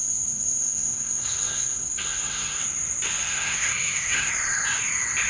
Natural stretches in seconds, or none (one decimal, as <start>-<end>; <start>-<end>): 2.6-3.3; 4.3-5.3